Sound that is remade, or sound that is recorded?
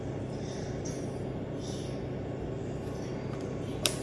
recorded